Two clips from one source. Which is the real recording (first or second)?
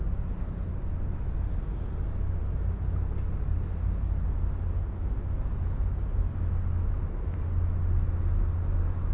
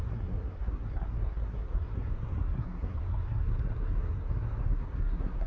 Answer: first